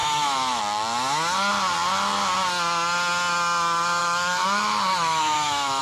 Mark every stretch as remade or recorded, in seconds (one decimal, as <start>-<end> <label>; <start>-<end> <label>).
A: 0.0-0.6 remade; 0.6-4.0 recorded; 4.0-5.8 remade

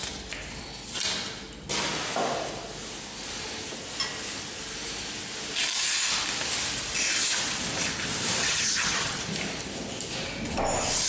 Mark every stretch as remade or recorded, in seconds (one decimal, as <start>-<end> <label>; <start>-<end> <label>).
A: 0.0-8.4 recorded; 8.4-9.2 remade; 9.2-11.1 recorded

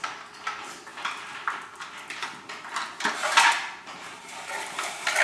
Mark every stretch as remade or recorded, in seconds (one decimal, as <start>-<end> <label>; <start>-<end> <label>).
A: 0.0-5.2 recorded

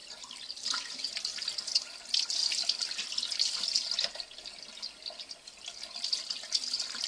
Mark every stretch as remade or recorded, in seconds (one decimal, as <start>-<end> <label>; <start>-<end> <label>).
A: 0.0-1.1 remade; 1.1-7.1 recorded

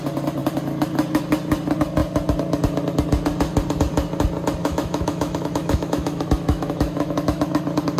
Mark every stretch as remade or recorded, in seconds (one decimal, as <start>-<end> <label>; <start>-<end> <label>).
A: 0.0-4.6 recorded; 4.6-7.6 remade; 7.6-8.0 recorded

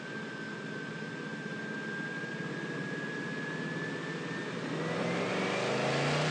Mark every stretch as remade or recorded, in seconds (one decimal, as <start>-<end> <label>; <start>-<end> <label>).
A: 0.0-6.3 recorded

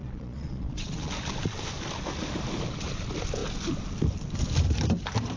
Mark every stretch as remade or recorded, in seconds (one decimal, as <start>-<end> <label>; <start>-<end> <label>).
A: 0.0-1.1 remade; 1.1-5.4 recorded

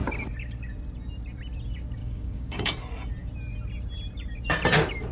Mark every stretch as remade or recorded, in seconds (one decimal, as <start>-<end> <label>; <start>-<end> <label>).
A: 0.0-2.0 recorded; 2.0-2.7 remade; 2.7-5.1 recorded